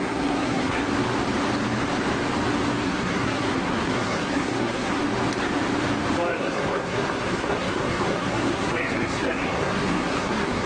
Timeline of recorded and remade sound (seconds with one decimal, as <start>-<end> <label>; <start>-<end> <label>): 0.0-0.8 remade; 0.8-2.8 recorded; 2.8-5.0 remade; 5.0-6.4 recorded; 6.4-10.7 remade